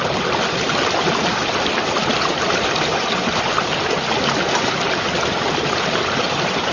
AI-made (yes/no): no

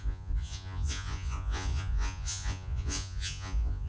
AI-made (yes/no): yes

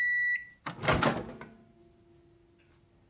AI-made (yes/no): no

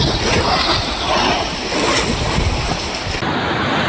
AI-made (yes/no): no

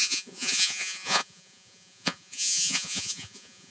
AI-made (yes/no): yes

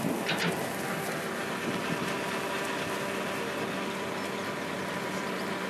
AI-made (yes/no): no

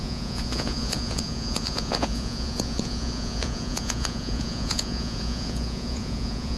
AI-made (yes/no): yes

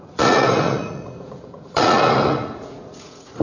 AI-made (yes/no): yes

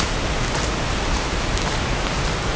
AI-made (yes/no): no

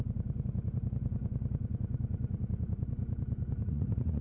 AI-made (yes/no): yes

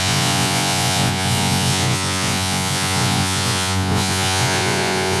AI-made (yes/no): yes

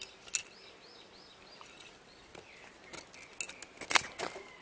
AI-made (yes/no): no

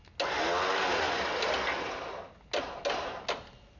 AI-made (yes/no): no